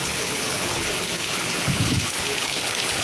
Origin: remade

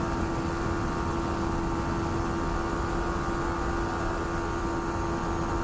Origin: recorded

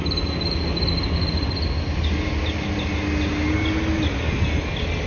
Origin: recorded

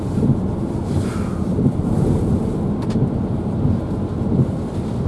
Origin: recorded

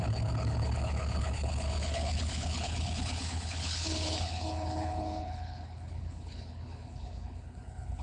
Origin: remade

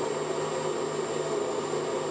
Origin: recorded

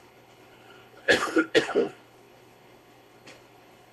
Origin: remade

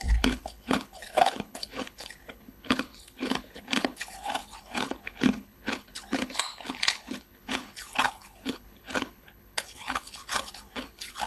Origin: remade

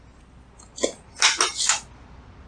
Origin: recorded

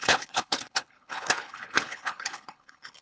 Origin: remade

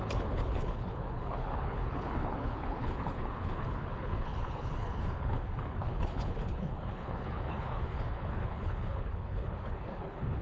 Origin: remade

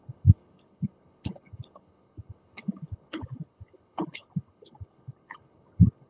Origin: remade